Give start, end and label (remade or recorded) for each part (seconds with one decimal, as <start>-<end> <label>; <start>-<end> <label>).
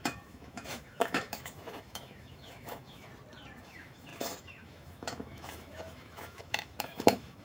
0.0-3.1 remade; 3.1-3.6 recorded; 3.6-7.4 remade